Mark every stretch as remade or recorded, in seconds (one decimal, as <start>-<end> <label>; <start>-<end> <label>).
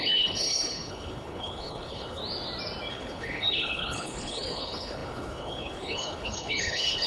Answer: 0.0-2.2 remade; 2.2-2.9 recorded; 2.9-7.1 remade